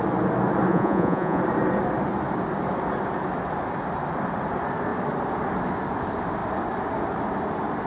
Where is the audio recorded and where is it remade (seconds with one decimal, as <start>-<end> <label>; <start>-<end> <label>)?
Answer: 0.0-0.7 recorded; 0.7-1.4 remade; 1.4-7.9 recorded